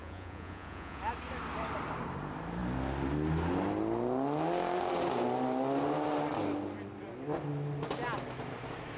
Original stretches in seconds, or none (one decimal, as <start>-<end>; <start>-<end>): 1.0-9.0